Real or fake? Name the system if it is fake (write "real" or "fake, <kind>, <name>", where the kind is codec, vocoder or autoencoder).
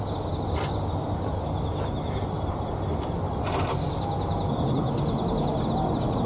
real